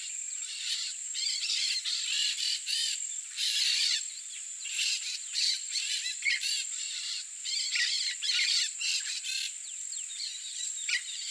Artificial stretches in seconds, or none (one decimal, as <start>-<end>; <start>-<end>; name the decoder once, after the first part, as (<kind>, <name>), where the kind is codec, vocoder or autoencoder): 0.0-8.6 (vocoder, BigVGAN v2); 9.8-11.3